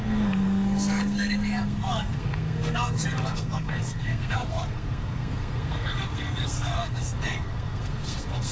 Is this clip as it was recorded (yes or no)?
no